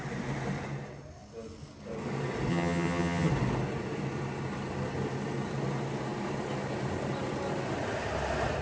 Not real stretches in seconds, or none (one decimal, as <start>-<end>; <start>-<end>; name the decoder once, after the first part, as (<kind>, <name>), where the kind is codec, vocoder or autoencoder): 2.5-3.3 (vocoder, HiFi-GAN)